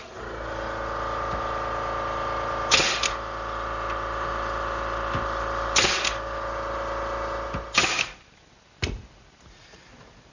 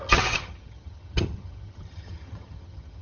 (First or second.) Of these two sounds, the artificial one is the second